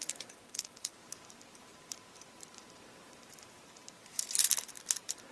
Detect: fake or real fake